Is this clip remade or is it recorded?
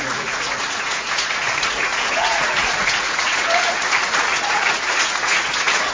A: remade